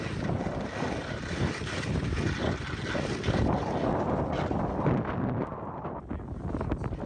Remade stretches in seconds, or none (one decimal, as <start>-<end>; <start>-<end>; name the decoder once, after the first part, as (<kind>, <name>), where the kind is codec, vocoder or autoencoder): none